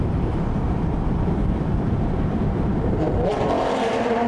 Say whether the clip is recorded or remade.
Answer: remade